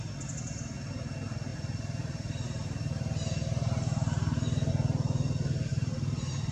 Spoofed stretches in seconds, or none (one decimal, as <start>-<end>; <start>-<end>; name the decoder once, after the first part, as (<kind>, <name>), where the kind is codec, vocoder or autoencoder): 1.5-4.7 (vocoder, BigVGAN v2); 5.7-6.5